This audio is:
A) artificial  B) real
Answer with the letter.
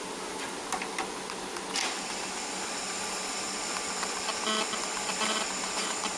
B